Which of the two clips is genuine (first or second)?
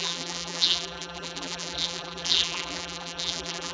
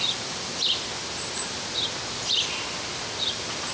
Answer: second